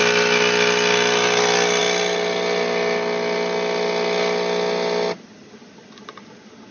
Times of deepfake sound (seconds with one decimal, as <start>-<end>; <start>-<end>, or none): none